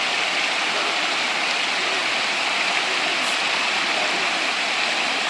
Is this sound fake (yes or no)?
no